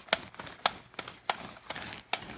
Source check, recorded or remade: recorded